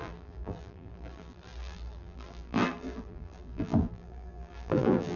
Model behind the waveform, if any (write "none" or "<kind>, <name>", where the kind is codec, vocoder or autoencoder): vocoder, BigVGAN v2